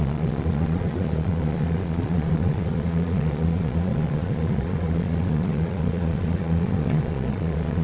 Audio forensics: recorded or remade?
remade